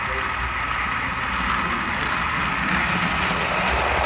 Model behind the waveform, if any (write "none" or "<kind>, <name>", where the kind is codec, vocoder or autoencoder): none